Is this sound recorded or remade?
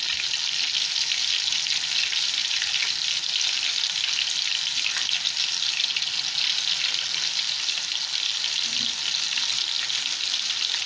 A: recorded